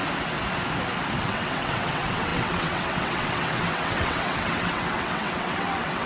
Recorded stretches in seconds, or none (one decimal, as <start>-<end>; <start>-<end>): 0.0-1.2